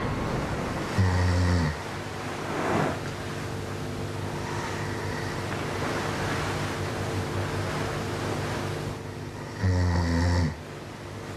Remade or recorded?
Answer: recorded